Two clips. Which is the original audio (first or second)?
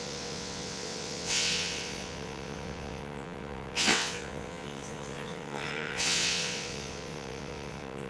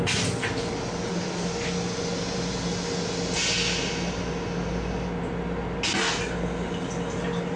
second